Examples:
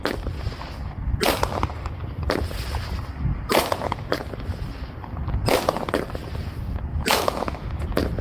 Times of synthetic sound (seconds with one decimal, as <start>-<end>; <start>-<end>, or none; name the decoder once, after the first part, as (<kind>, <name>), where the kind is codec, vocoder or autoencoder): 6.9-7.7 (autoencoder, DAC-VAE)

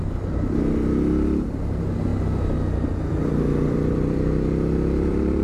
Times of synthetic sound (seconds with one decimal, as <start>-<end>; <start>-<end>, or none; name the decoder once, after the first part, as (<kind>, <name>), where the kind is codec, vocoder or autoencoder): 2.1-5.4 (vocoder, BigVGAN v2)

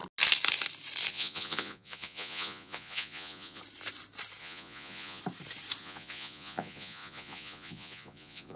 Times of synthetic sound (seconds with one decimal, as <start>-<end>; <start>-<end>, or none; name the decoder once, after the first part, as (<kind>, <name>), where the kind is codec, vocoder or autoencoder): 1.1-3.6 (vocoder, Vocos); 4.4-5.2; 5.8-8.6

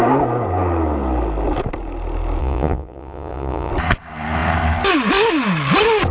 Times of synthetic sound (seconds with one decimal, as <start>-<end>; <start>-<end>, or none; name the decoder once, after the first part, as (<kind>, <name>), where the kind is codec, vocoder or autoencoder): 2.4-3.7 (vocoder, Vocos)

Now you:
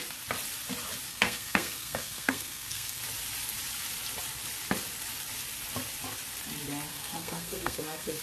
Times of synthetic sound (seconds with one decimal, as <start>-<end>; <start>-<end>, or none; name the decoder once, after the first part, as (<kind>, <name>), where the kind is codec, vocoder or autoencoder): 1.1-3.0 (codec, SNAC); 6.9-8.2

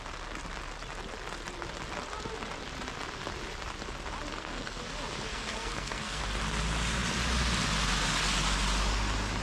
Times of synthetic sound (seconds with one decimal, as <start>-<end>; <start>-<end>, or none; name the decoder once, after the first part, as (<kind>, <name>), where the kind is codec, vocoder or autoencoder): 4.3-4.8 (codec, SNAC); 5.3-6.2

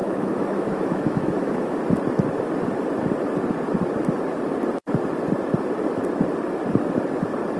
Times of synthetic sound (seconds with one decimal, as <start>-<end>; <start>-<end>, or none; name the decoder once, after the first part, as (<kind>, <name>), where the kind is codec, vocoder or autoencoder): 0.0-1.8 (autoencoder, DAC-VAE)